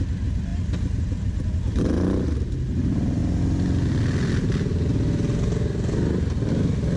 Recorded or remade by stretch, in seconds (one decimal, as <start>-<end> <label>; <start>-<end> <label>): 0.0-7.0 recorded